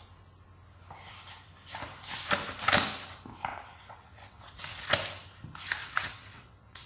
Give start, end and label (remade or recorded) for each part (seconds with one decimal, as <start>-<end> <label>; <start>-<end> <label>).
0.0-3.5 recorded; 3.5-4.5 remade; 4.5-5.8 recorded; 5.8-6.9 remade

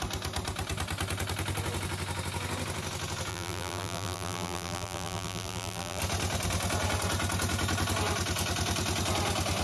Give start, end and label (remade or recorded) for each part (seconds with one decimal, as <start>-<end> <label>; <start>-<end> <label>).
0.0-3.3 recorded; 3.3-6.0 remade; 6.0-9.6 recorded

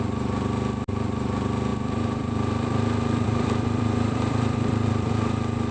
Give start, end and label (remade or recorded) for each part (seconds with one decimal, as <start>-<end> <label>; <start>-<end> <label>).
0.0-1.7 recorded; 1.7-5.1 remade; 5.1-5.7 recorded

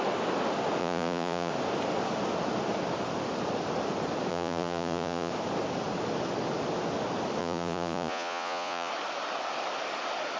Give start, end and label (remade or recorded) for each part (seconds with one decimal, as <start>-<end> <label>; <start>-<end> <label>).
0.0-0.8 recorded; 0.8-1.5 remade; 1.5-4.3 recorded; 4.3-5.3 remade; 5.3-7.4 recorded; 7.4-8.9 remade; 8.9-10.4 recorded

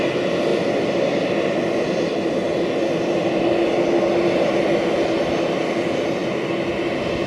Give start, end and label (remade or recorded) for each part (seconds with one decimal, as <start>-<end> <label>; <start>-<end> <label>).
0.0-7.3 recorded

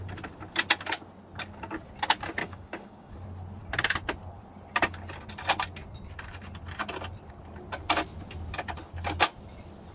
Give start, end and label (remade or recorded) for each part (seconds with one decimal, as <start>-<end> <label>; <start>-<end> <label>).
0.0-2.4 recorded; 2.4-3.1 remade; 3.1-9.9 recorded

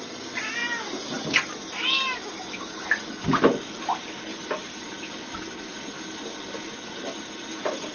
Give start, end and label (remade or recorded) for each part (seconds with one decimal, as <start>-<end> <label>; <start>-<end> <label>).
0.0-0.6 remade; 0.6-3.0 recorded; 3.0-7.9 remade